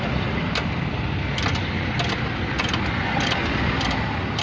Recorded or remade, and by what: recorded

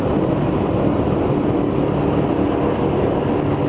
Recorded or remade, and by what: recorded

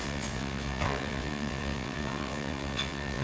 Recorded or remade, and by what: remade, vocoder, WaveNeXt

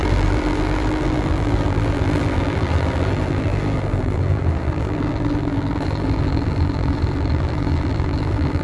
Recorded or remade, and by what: remade, vocoder, BigVGAN v2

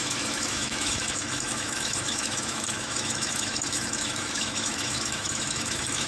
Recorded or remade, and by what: remade, autoencoder, DAC-VAE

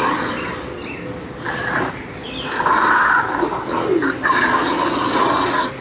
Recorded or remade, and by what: recorded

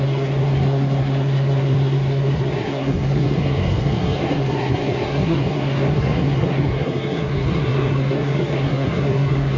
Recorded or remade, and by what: remade, codec, SNAC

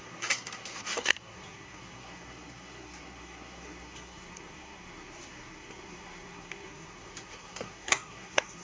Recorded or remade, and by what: remade, codec, SNAC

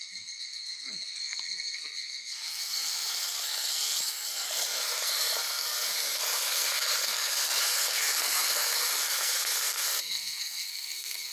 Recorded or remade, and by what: remade, codec, SNAC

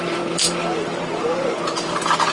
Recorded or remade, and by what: remade, vocoder, BigVGAN v2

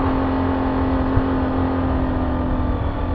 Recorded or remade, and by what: recorded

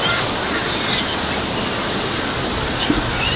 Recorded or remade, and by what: recorded